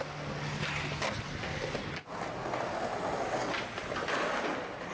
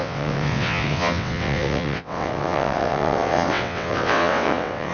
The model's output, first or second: second